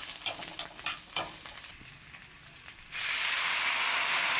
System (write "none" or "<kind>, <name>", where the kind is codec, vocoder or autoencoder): vocoder, BigVGAN v2